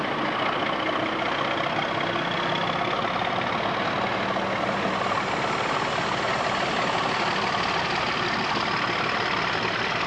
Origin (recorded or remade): recorded